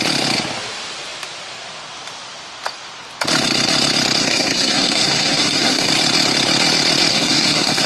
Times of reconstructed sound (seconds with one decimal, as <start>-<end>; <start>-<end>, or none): 4.2-5.9; 7.1-7.9